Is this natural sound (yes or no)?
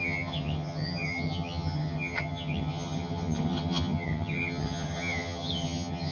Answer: no